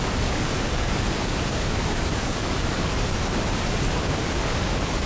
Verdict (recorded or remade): remade